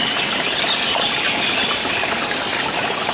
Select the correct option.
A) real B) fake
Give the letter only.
A